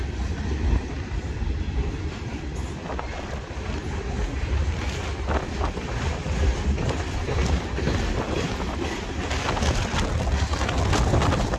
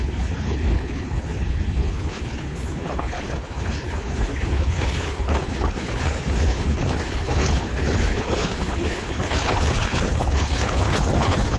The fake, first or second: second